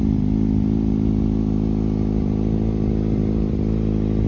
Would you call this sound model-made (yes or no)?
no